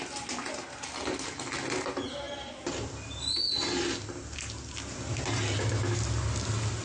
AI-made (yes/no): no